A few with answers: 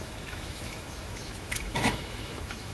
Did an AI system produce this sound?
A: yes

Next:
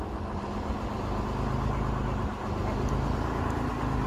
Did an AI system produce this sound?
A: no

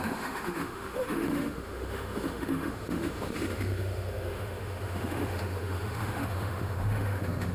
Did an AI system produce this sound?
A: yes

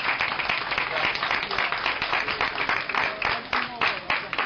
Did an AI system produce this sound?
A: no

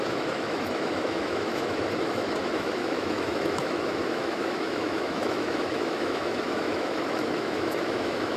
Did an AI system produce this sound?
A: yes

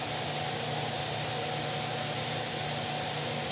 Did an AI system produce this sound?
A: no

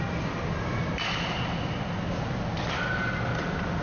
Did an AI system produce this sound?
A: no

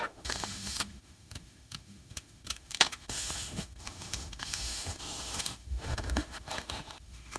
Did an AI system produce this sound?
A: yes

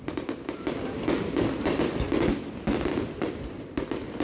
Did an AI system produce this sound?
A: no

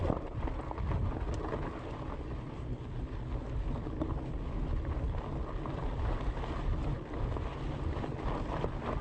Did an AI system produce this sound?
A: no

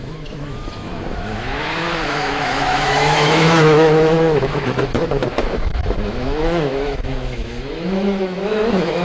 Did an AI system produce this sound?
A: yes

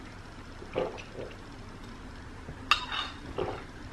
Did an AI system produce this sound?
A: no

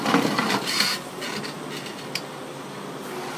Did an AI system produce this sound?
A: no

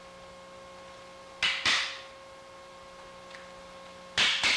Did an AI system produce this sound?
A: no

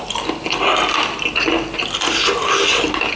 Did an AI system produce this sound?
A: no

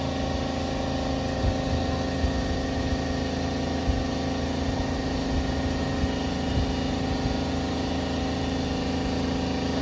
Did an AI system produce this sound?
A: no